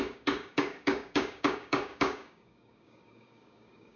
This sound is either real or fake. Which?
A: fake